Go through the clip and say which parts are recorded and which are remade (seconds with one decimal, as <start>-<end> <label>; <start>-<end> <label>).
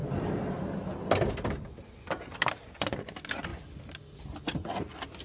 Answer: 0.0-5.2 recorded